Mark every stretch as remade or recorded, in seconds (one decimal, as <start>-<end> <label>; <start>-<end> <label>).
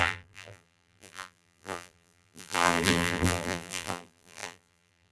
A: 0.0-5.1 remade